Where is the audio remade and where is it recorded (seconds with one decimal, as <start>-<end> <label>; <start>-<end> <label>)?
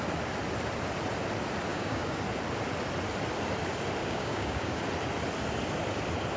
0.0-1.7 recorded; 1.7-2.2 remade; 2.2-4.0 recorded; 4.0-4.8 remade; 4.8-6.4 recorded